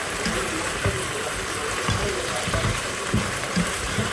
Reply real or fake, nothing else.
fake